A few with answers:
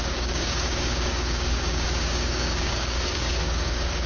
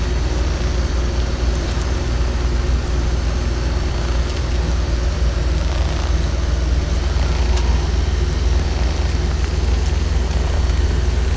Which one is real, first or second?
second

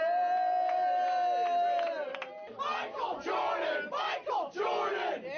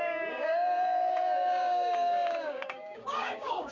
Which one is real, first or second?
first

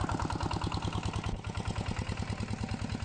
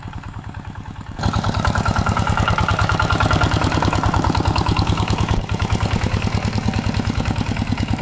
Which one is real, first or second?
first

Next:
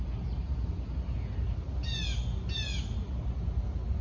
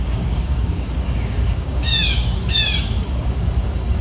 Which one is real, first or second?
first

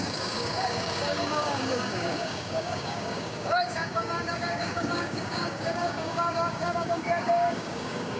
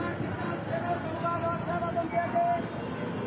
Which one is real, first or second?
second